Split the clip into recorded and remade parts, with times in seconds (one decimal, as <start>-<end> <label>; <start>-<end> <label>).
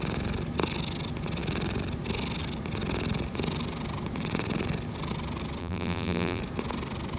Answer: 0.0-5.6 recorded; 5.6-6.4 remade; 6.4-7.2 recorded